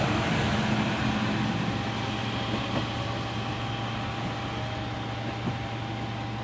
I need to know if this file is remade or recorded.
recorded